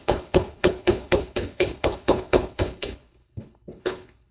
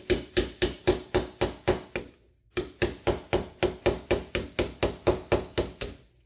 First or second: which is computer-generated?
first